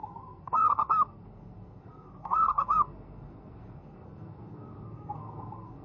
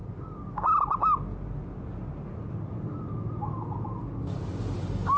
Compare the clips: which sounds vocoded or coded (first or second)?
first